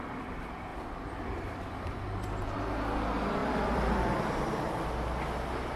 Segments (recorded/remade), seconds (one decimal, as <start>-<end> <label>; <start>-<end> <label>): 0.0-0.7 recorded; 0.7-2.4 remade; 2.4-3.4 recorded; 3.4-4.7 remade; 4.7-5.8 recorded